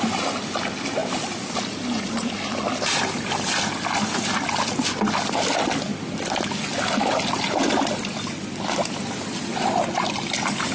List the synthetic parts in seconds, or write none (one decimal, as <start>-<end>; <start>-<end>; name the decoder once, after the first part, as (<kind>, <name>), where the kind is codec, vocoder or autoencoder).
none